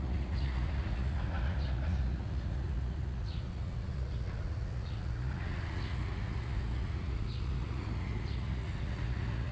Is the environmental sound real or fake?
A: fake